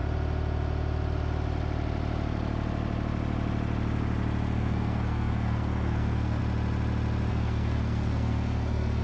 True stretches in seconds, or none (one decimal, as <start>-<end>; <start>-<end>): 0.0-4.6; 6.4-7.3